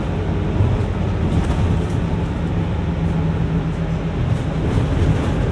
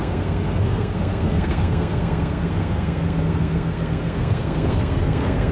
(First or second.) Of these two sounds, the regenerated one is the second